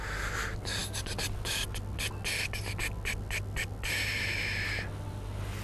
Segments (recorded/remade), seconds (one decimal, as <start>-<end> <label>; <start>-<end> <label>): 0.0-5.6 recorded